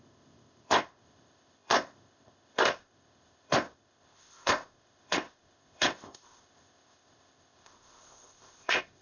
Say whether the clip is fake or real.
fake